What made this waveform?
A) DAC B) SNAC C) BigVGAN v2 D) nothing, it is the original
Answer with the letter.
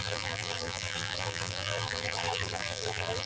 C